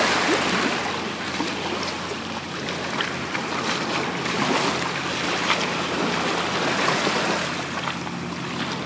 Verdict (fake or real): real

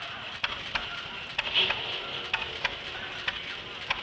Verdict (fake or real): real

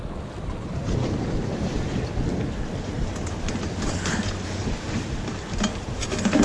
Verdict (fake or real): real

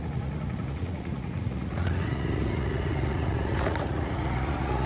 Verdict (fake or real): fake